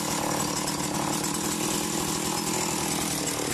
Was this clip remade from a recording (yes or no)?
no